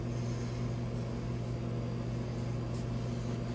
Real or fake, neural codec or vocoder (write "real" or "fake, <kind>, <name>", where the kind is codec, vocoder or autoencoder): real